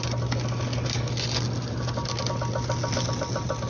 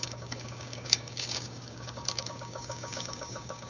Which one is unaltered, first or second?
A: first